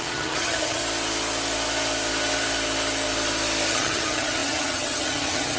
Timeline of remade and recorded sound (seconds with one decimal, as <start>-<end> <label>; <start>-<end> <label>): 0.0-0.8 remade; 0.8-3.7 recorded; 3.7-5.6 remade